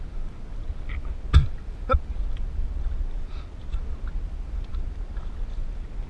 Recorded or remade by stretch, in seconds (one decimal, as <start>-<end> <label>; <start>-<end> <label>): 0.0-6.1 recorded